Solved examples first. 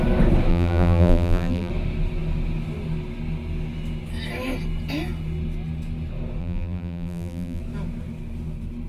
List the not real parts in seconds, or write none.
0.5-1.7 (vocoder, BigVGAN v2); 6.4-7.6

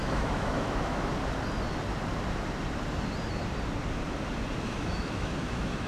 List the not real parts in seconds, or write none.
0.0-1.1 (autoencoder, DAC-VAE); 4.6-5.9